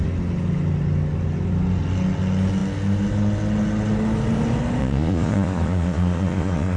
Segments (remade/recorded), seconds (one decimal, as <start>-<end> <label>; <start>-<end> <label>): 0.0-4.8 recorded; 4.8-6.8 remade